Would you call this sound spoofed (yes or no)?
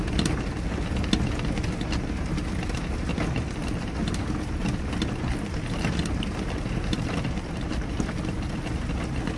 no